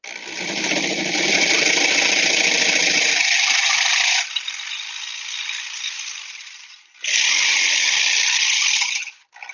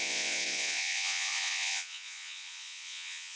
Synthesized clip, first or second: second